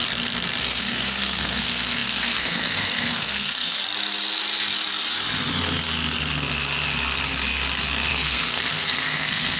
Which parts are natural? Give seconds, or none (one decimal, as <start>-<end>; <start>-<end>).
0.0-0.6; 3.8-8.1